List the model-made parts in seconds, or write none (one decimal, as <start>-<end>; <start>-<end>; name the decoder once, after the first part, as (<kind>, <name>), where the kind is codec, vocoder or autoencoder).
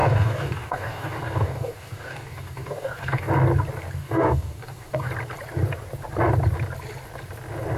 0.0-3.3 (codec, DAC); 4.0-5.1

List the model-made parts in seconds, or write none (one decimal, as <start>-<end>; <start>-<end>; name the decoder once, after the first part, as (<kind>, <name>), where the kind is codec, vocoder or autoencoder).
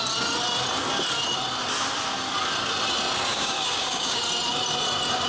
3.3-4.2 (codec, DAC)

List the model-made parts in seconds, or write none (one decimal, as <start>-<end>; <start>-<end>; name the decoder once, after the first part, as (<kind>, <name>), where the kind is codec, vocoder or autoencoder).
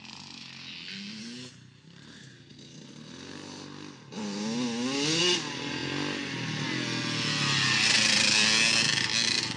none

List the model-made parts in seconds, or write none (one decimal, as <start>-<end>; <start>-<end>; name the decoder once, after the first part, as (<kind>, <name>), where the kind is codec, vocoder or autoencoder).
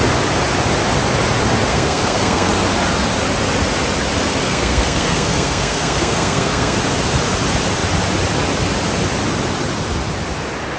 1.7-2.5 (codec, SNAC); 4.4-6.8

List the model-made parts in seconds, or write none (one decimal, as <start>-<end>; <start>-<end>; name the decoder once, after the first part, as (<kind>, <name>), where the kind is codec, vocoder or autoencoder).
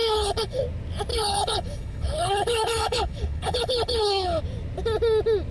0.0-0.6 (codec, HILCodec); 1.1-4.4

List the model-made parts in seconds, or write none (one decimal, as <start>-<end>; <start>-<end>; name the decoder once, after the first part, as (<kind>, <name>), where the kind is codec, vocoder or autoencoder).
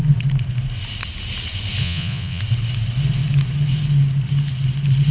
1.8-2.4 (vocoder, Vocos)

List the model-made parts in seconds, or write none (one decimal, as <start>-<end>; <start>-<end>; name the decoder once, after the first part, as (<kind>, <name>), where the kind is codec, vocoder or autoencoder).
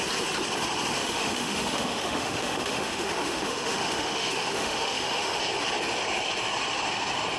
1.0-5.4 (autoencoder, DAC-VAE)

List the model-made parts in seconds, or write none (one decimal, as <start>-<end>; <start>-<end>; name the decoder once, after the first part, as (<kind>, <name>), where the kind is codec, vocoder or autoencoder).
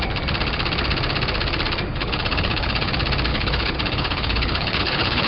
1.9-2.9 (codec, HILCodec); 3.3-5.3